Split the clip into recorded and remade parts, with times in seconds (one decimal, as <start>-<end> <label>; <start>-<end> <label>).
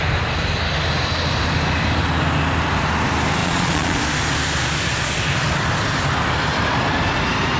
0.0-3.4 recorded; 3.4-4.0 remade; 4.0-7.6 recorded